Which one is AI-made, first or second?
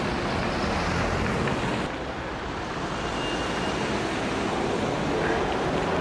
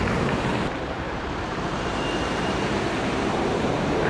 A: second